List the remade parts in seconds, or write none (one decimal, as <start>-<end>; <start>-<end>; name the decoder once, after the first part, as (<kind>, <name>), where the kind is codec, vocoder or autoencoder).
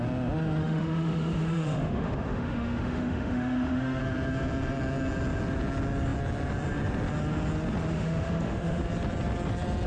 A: 0.6-4.0 (autoencoder, DAC-VAE); 7.9-8.8